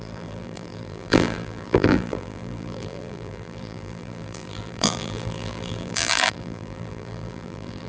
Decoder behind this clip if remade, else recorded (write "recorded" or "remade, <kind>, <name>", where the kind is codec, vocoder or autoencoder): remade, vocoder, BigVGAN v2